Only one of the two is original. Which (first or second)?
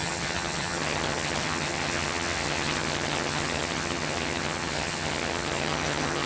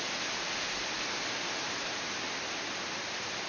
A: second